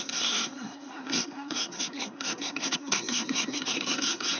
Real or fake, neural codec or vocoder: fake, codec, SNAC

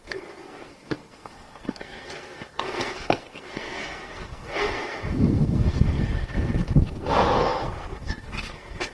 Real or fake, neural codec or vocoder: fake, codec, SNAC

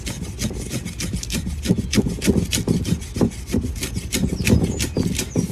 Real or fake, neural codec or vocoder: real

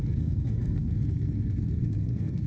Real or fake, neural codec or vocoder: fake, codec, SNAC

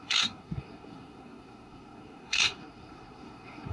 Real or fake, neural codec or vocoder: fake, codec, SNAC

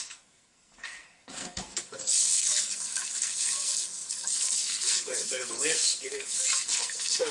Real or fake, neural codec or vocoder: fake, codec, SNAC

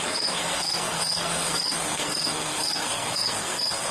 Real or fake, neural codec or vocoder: fake, codec, SNAC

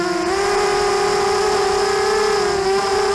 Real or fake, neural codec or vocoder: real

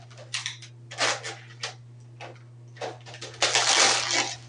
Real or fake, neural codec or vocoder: real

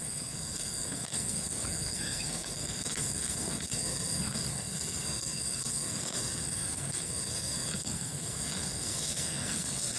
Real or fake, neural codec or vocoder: fake, codec, SNAC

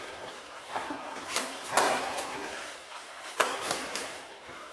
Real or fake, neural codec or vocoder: fake, codec, SNAC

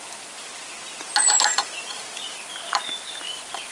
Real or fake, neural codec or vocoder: real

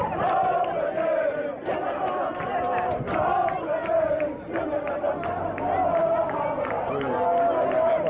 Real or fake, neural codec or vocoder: real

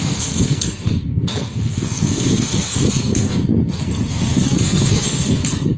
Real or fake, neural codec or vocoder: fake, codec, SNAC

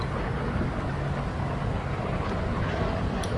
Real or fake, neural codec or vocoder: real